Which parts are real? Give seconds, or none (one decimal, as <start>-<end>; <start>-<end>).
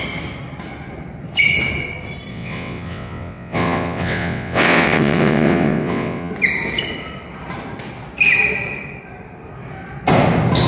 0.0-2.3; 6.3-10.7